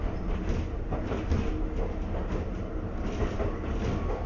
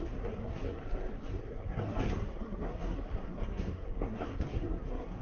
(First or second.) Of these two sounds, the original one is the first